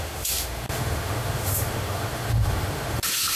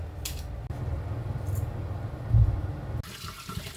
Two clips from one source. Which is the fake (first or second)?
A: first